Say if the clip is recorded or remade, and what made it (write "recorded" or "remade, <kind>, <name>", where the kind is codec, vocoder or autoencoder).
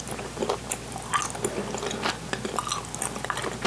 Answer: recorded